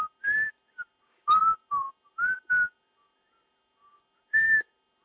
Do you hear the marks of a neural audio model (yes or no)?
no